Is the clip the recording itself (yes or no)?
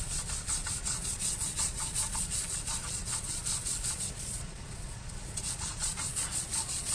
no